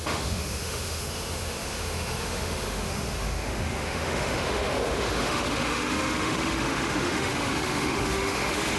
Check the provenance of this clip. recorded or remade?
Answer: remade